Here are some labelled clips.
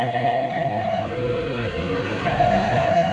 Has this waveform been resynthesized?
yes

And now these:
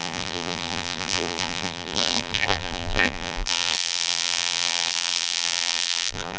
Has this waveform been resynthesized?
yes